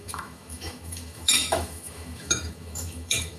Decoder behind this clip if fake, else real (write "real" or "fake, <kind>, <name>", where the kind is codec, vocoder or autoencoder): fake, autoencoder, DAC-VAE